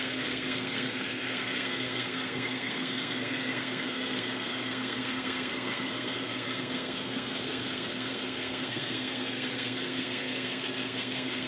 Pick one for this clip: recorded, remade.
remade